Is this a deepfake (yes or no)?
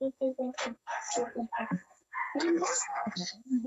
yes